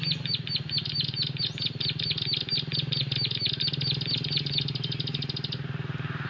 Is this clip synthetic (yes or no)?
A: no